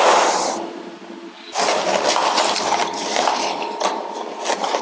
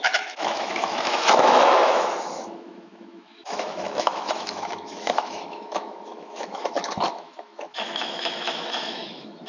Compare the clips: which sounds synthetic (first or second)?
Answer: second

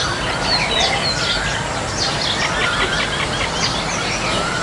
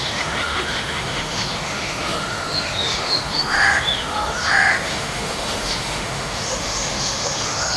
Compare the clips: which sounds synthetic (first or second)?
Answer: second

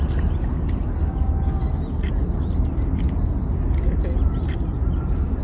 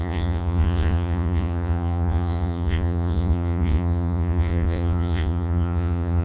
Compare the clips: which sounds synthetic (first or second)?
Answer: second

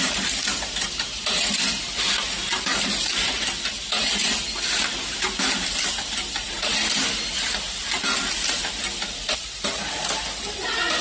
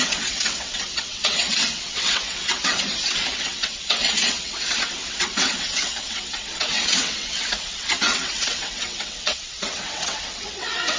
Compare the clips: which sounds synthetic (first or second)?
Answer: second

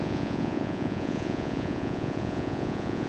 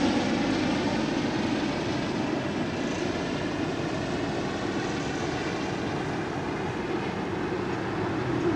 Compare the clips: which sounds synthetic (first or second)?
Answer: first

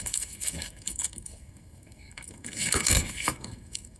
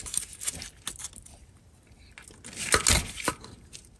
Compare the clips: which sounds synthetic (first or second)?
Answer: first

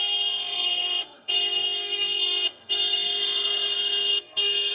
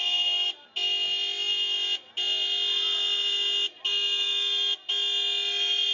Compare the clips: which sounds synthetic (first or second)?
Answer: first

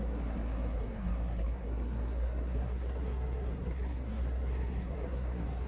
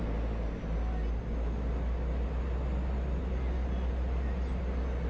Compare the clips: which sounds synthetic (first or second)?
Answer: first